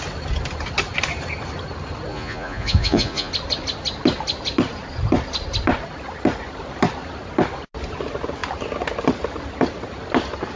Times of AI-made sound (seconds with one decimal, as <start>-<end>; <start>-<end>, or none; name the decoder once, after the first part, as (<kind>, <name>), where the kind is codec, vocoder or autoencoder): 2.1-3.3 (vocoder, Vocos)